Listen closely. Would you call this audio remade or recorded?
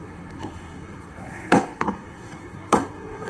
remade